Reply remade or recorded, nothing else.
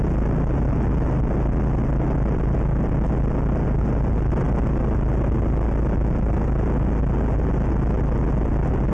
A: recorded